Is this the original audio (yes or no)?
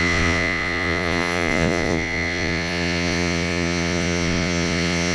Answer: no